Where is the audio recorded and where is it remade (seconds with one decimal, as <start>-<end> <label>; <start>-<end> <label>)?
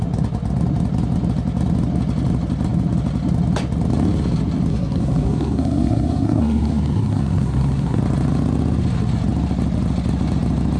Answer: 0.0-4.7 recorded; 4.7-8.0 remade; 8.0-10.8 recorded